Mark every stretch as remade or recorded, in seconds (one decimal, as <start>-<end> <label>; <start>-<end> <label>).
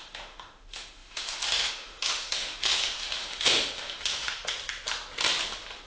0.0-4.4 remade; 4.4-5.9 recorded